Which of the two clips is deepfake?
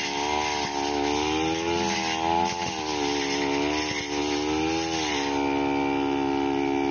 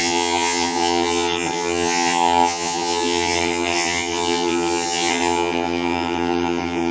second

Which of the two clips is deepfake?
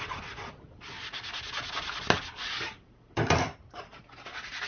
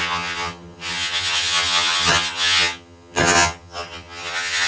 second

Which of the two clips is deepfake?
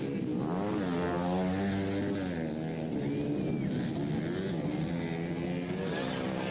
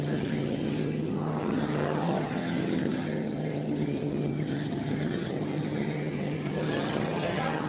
second